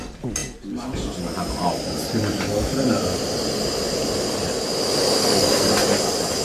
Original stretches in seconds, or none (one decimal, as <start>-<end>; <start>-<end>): 0.0-5.2; 5.7-6.4

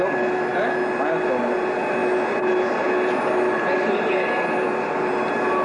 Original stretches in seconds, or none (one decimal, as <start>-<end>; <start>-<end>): 0.0-5.6

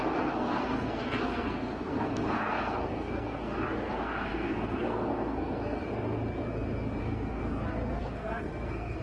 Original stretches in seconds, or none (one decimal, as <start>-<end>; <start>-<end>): 5.8-7.0; 7.4-8.0